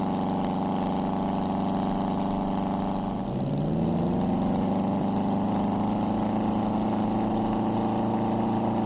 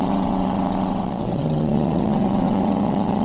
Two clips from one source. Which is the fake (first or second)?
second